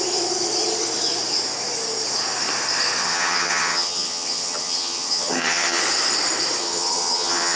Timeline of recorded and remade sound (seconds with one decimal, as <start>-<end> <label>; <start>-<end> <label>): 0.0-3.0 recorded; 3.0-5.8 remade; 5.8-6.6 recorded; 6.6-7.6 remade